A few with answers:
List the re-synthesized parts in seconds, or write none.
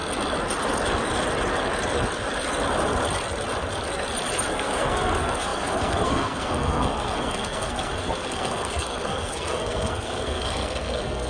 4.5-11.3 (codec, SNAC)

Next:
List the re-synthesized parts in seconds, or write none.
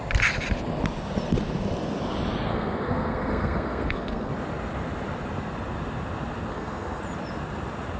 2.5-4.3 (codec, SNAC); 6.5-7.0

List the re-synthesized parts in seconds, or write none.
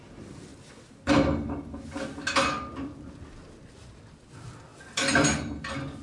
none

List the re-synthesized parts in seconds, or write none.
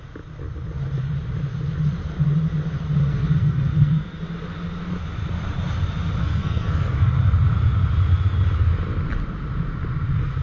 3.0-4.2 (codec, SNAC); 6.2-7.1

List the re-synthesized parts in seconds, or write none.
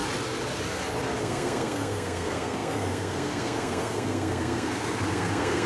1.2-5.7 (codec, SNAC)